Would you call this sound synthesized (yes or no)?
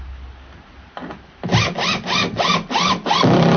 no